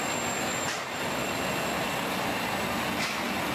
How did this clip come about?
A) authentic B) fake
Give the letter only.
A